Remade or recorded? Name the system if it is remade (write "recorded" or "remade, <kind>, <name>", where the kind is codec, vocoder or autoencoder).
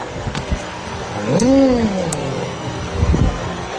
remade, codec, SNAC